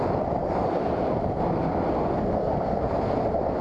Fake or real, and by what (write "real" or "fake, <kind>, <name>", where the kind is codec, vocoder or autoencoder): real